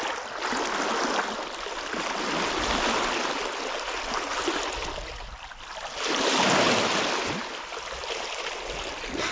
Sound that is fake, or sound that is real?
real